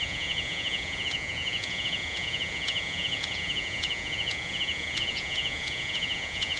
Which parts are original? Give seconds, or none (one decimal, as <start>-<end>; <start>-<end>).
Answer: none